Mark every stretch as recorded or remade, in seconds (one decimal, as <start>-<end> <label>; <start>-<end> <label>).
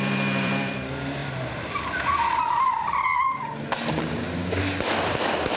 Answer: 0.0-1.2 remade; 1.2-4.6 recorded; 4.6-5.6 remade